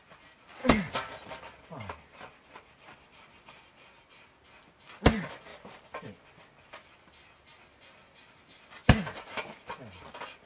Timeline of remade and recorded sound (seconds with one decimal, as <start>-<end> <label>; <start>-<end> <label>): 0.0-0.6 recorded; 0.6-3.6 remade; 3.6-5.5 recorded; 5.5-6.9 remade; 6.9-10.5 recorded